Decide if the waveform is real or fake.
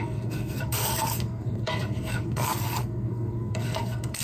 fake